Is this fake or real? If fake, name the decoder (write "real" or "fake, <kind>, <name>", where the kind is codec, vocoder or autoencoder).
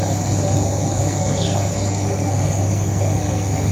fake, codec, SNAC